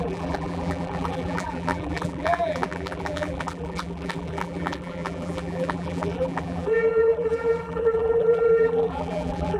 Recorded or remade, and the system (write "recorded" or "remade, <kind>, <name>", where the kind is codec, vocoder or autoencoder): remade, vocoder, BigVGAN v2